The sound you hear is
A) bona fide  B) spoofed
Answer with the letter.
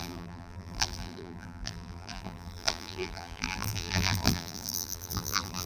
B